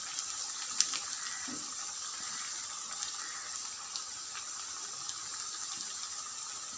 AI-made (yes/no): no